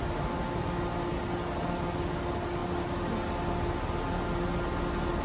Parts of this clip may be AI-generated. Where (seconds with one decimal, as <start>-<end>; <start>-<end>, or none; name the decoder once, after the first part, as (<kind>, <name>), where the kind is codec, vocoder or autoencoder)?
none